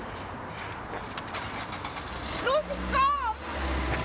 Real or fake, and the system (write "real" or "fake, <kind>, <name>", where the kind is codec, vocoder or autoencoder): real